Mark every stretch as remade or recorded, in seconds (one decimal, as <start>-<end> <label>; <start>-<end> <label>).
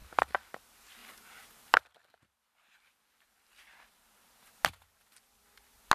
0.0-0.6 remade; 0.6-1.0 recorded; 1.0-4.5 remade; 4.5-5.9 recorded